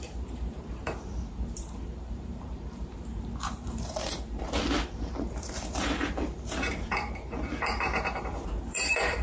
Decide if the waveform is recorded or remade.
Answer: remade